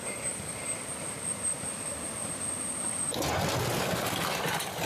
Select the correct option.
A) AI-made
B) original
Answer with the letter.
B